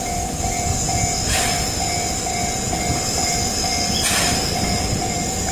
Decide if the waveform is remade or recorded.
recorded